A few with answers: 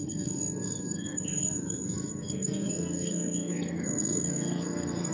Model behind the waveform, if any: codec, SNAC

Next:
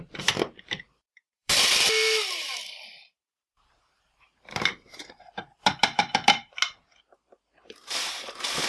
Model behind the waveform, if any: vocoder, BigVGAN v2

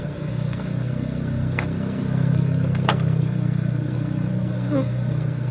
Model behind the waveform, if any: codec, SNAC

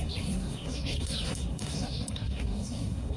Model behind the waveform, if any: codec, SNAC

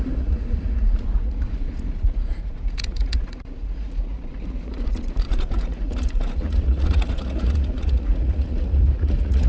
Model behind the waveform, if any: vocoder, Vocos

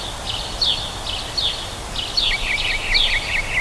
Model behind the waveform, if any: none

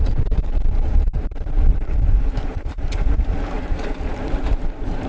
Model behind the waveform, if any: vocoder, BigVGAN v2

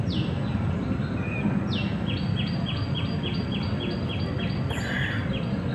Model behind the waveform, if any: none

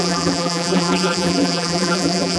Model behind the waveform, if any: vocoder, BigVGAN v2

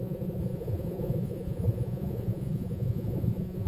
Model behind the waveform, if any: vocoder, Vocos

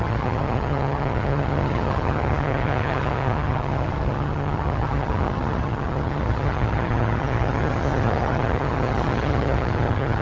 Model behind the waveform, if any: vocoder, HiFi-GAN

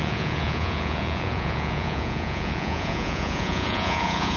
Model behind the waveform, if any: vocoder, Vocos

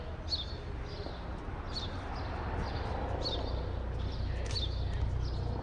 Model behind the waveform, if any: none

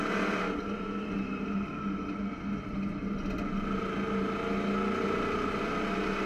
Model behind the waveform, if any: none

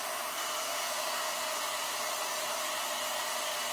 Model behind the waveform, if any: none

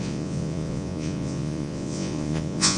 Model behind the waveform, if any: vocoder, Vocos